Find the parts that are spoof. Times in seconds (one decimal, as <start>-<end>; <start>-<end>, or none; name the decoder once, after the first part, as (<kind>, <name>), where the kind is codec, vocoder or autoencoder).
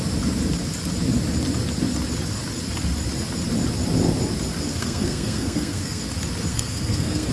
4.7-6.0 (codec, SNAC); 6.5-7.3